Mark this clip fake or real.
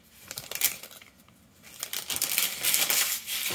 real